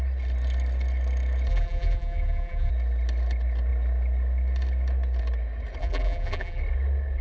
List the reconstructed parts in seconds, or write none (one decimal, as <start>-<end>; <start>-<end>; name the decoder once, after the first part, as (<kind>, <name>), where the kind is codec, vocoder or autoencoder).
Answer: 1.5-2.7 (vocoder, BigVGAN v2); 5.8-6.6

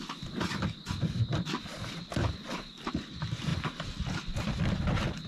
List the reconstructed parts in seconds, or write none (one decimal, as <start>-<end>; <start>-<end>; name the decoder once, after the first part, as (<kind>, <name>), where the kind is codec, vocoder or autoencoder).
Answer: none

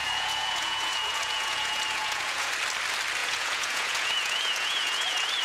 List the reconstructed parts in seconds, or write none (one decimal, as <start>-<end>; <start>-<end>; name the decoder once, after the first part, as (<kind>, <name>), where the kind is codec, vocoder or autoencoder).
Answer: 0.0-2.5 (vocoder, Vocos); 3.2-5.4